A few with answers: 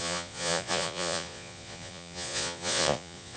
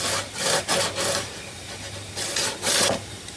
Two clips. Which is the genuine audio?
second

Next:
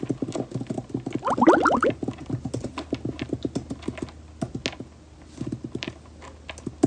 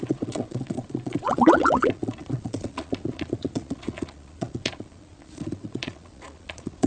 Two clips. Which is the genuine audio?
first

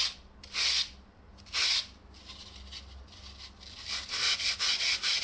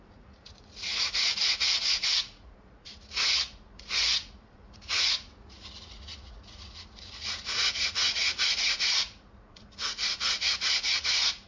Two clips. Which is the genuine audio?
first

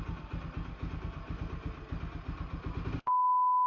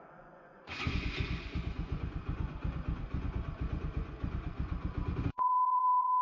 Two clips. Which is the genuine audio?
first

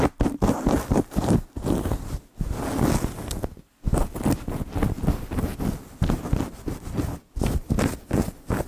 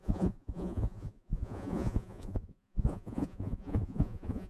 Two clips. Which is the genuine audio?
first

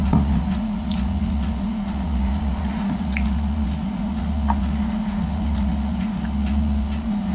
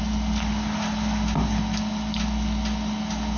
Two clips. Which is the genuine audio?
second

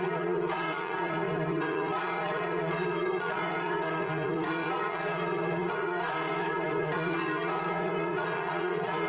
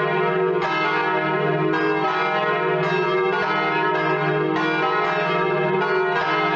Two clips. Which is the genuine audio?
second